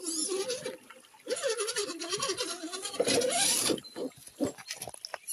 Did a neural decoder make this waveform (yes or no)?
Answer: no